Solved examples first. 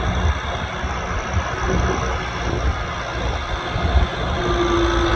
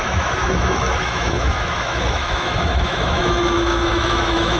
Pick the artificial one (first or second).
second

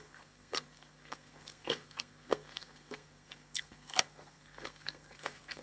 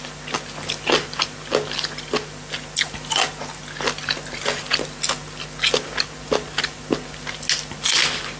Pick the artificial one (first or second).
first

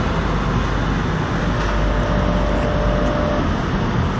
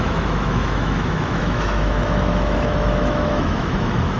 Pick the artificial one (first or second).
second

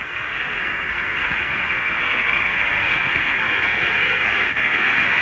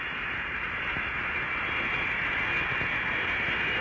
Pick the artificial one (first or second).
first